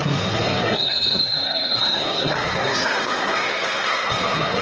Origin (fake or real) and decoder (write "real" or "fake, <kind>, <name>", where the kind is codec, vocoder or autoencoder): fake, codec, SNAC